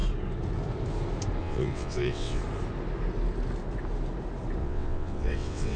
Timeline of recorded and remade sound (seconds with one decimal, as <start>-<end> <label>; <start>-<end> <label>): 0.0-1.4 recorded; 1.4-2.4 remade; 2.4-4.6 recorded; 4.6-5.8 remade

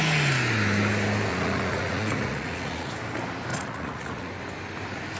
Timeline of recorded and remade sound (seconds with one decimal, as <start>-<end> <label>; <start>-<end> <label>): 0.0-1.3 recorded; 1.3-2.9 remade; 2.9-3.5 recorded; 3.5-4.3 remade; 4.3-5.2 recorded